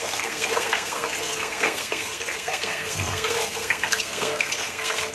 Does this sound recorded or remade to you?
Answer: remade